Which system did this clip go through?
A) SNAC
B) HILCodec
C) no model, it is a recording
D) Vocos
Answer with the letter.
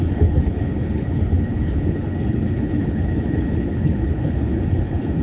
B